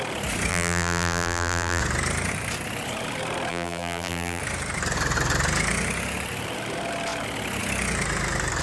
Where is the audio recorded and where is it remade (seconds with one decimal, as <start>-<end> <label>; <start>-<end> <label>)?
0.0-0.5 recorded; 0.5-1.8 remade; 1.8-3.5 recorded; 3.5-4.4 remade; 4.4-8.6 recorded